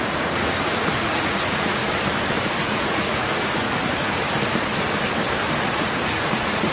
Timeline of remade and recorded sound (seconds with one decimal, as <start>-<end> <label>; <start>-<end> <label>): 0.0-1.8 remade; 1.8-2.4 recorded; 2.4-4.2 remade; 4.2-5.6 recorded; 5.6-6.7 remade